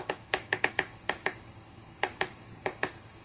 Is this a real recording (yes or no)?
no